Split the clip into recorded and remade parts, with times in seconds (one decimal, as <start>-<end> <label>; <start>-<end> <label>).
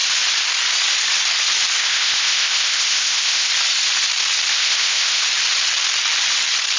0.0-1.8 recorded; 1.8-3.5 remade; 3.5-4.5 recorded; 4.5-5.2 remade; 5.2-6.8 recorded